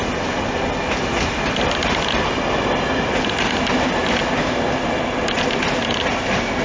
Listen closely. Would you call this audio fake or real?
real